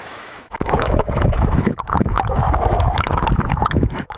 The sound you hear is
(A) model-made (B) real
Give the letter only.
A